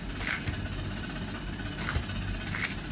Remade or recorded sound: recorded